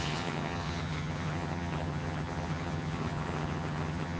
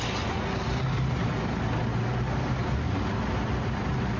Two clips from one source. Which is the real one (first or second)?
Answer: second